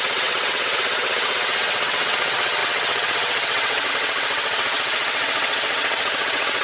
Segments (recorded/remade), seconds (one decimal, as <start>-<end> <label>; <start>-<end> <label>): 0.0-6.6 remade